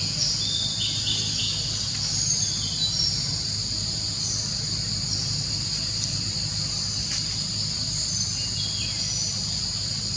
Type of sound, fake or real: real